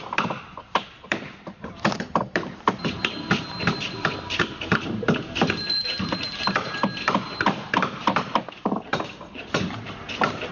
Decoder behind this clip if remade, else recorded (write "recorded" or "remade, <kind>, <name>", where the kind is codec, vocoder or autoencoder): remade, vocoder, BigVGAN v2